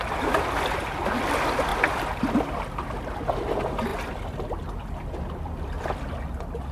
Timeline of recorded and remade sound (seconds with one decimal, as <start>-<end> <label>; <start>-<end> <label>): 0.0-6.7 recorded